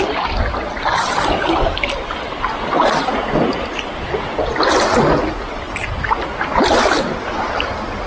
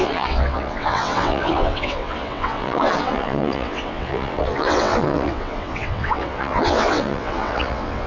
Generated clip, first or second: second